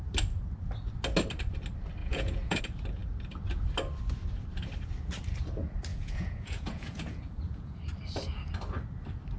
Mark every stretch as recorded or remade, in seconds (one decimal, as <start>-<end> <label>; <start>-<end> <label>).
0.0-2.0 recorded; 2.0-2.6 remade; 2.6-5.9 recorded; 5.9-7.8 remade; 7.8-9.4 recorded